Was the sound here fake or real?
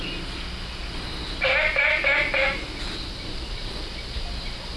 real